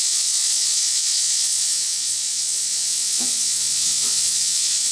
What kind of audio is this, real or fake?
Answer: fake